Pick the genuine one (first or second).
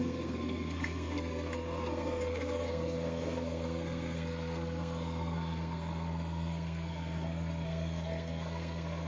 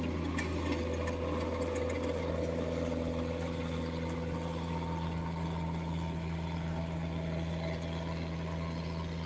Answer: second